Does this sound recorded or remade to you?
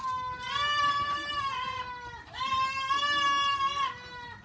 recorded